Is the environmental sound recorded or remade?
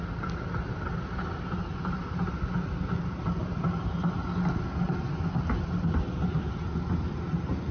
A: recorded